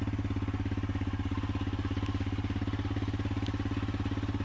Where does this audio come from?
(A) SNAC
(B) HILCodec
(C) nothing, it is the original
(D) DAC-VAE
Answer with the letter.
C